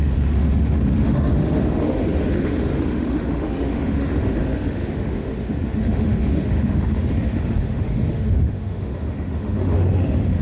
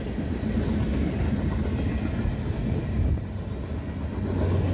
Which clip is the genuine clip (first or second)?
second